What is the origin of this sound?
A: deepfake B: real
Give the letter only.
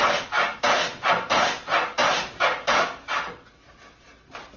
B